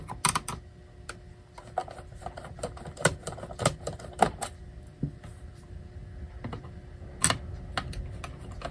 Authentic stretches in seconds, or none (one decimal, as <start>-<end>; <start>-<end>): 0.0-1.8; 5.8-8.7